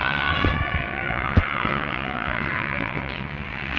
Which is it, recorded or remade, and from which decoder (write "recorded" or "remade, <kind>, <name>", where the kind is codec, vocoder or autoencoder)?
remade, vocoder, WaveNeXt